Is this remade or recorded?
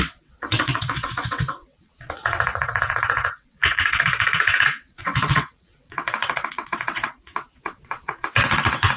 remade